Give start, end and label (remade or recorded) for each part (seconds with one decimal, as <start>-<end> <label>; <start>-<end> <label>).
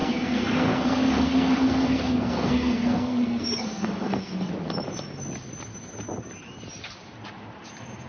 0.0-4.5 remade; 4.5-8.1 recorded